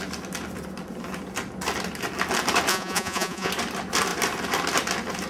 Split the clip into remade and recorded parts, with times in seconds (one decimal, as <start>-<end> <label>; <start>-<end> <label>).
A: 0.0-2.7 recorded; 2.7-3.5 remade; 3.5-5.3 recorded